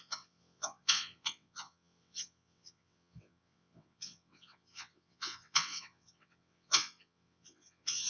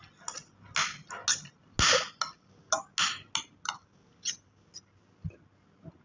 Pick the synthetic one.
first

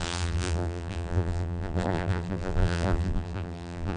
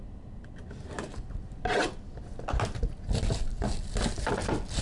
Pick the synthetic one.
first